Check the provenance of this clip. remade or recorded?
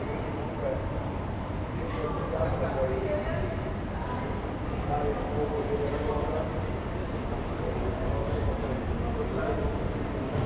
recorded